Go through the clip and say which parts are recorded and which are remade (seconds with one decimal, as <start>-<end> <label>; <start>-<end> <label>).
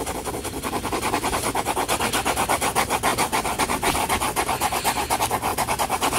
0.0-5.5 recorded; 5.5-6.2 remade